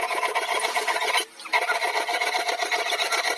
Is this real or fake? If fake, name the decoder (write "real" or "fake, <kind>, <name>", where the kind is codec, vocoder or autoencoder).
real